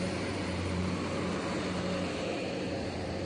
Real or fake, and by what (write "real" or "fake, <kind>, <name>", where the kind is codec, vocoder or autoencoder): fake, vocoder, BigVGAN v2